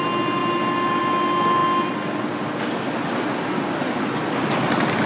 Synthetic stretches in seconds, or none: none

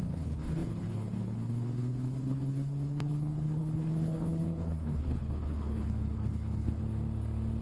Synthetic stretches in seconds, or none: 0.0-6.8 (codec, HILCodec)

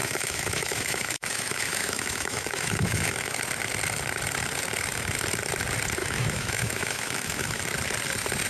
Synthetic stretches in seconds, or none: 0.0-3.4 (autoencoder, DAC-VAE); 6.0-7.6

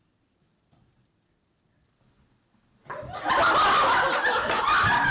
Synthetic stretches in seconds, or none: none

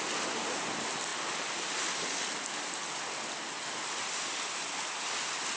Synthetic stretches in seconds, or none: none

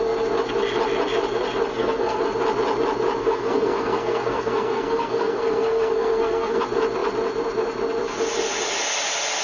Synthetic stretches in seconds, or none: 1.7-2.2 (codec, SNAC); 3.2-6.6

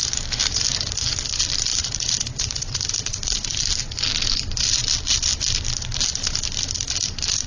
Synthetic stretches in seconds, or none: 0.4-1.1 (vocoder, BigVGAN v2); 1.7-4.0